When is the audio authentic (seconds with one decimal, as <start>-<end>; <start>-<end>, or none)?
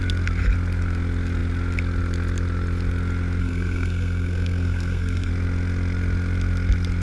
0.0-3.4; 5.3-7.0